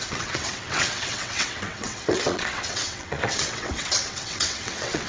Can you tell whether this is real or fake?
fake